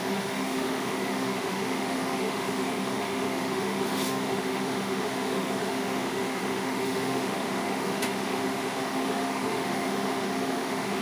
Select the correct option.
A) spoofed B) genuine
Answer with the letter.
A